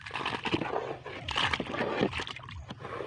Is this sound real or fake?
real